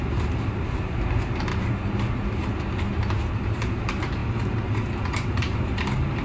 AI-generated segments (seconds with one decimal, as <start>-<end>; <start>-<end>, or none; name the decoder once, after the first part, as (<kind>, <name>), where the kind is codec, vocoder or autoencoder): 0.0-1.5 (vocoder, BigVGAN v2); 2.8-6.2